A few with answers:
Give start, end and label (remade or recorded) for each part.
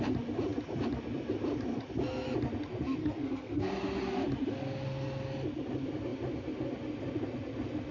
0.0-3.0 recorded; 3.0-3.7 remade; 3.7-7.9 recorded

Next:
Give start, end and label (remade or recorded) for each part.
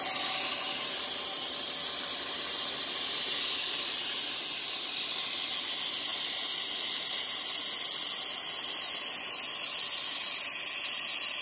0.0-11.4 recorded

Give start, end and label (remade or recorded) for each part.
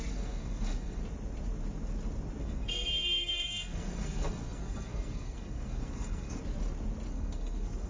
0.0-1.0 remade; 1.0-2.4 recorded; 2.4-6.4 remade; 6.4-7.1 recorded; 7.1-7.9 remade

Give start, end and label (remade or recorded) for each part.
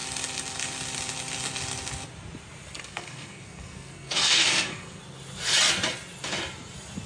0.0-2.8 recorded; 2.8-5.0 remade; 5.0-7.1 recorded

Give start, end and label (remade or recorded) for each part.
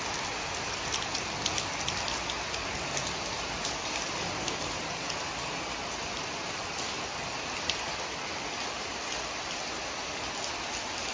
0.0-11.1 recorded